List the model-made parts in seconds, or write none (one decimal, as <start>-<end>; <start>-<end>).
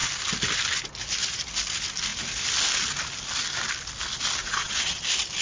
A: 4.4-5.0